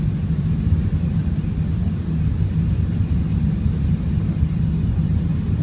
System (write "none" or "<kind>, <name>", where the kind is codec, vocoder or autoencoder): none